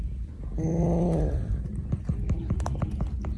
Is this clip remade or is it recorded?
recorded